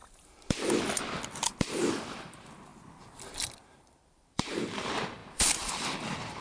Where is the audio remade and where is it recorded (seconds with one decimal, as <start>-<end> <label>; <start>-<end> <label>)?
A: 0.0-1.6 recorded; 1.6-2.7 remade; 2.7-3.6 recorded; 3.6-6.4 remade